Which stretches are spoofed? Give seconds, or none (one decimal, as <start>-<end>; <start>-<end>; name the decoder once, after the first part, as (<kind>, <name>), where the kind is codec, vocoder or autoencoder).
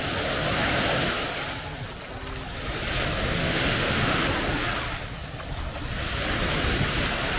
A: 3.4-4.2 (autoencoder, DAC-VAE)